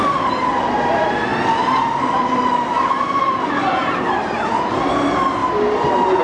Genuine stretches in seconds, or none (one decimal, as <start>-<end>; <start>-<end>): 0.0-6.2